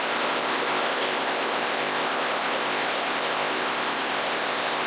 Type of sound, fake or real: fake